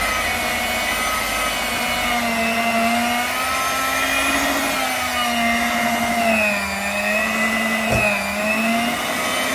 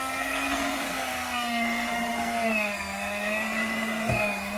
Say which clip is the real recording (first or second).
first